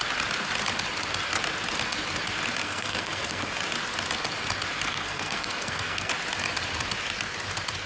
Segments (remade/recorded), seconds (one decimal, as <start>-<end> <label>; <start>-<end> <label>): 0.0-2.6 recorded; 2.6-3.5 remade; 3.5-4.9 recorded; 4.9-6.1 remade; 6.1-7.9 recorded